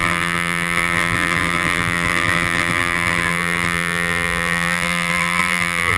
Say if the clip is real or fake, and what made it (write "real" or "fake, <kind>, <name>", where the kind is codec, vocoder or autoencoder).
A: fake, vocoder, BigVGAN v2